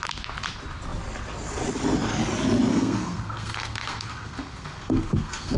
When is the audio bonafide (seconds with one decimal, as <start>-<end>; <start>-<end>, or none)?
0.0-2.7